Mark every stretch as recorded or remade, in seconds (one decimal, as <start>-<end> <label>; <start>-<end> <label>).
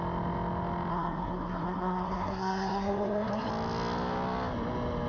0.0-0.9 recorded; 0.9-3.5 remade; 3.5-5.1 recorded